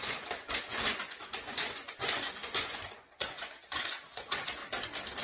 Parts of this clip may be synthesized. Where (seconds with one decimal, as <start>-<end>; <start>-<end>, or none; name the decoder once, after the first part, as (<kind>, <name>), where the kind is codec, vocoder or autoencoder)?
0.0-4.6 (vocoder, Vocos)